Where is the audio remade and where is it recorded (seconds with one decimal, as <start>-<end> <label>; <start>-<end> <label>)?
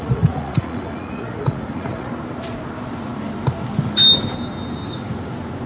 0.0-2.1 remade; 2.1-5.7 recorded